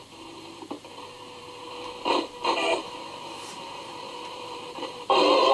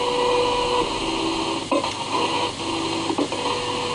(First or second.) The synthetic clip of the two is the first